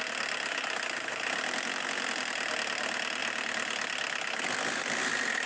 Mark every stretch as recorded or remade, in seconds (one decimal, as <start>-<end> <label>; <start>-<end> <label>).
0.0-5.5 recorded